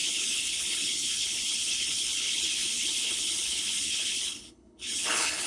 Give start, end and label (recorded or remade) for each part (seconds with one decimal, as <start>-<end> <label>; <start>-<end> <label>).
0.0-5.5 remade